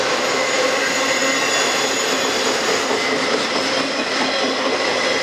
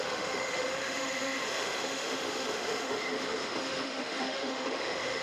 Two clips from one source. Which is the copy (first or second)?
second